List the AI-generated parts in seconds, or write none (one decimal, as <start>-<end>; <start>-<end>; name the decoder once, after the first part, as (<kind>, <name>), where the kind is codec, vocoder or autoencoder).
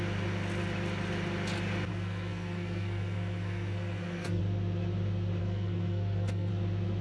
1.9-4.4 (codec, SNAC); 5.4-6.5